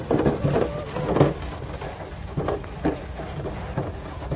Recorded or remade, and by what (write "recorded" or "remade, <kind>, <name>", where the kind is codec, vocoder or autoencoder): recorded